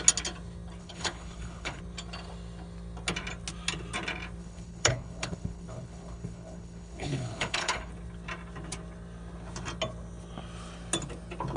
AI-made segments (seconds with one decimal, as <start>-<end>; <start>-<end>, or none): 0.8-1.8; 4.4-7.9